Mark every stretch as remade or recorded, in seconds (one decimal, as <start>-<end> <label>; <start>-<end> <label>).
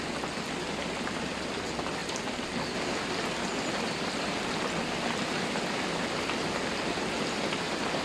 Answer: 0.0-8.0 recorded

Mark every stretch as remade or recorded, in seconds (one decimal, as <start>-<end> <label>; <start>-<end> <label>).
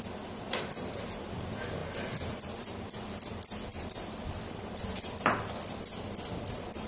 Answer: 0.0-3.7 recorded; 3.7-5.2 remade; 5.2-6.9 recorded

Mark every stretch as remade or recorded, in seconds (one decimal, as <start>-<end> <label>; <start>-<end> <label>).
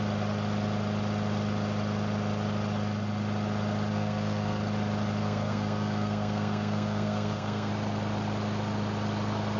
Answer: 0.0-3.9 recorded; 3.9-4.6 remade; 4.6-5.2 recorded; 5.2-7.7 remade; 7.7-9.6 recorded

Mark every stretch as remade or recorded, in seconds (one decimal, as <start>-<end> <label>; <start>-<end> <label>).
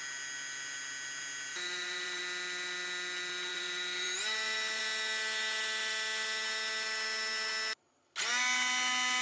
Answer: 0.0-1.5 recorded; 1.5-2.2 remade; 2.2-3.5 recorded; 3.5-4.8 remade; 4.8-9.2 recorded